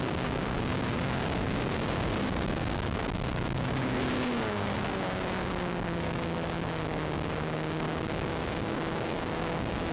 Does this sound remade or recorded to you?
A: remade